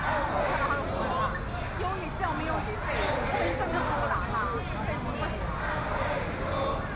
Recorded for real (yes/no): yes